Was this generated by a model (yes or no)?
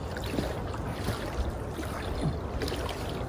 no